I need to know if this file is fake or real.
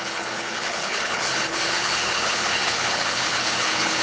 fake